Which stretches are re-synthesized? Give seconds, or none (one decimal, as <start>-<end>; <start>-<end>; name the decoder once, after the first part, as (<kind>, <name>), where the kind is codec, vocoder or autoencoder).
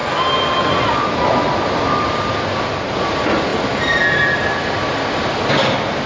none